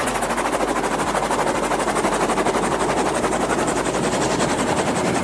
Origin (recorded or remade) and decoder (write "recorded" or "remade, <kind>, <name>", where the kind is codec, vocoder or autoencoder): recorded